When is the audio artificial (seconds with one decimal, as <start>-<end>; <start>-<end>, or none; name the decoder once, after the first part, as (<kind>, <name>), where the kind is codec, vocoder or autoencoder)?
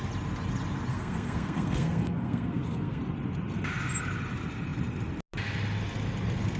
0.9-3.0 (codec, SNAC)